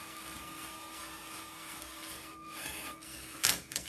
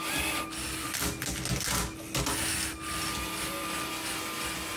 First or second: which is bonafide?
second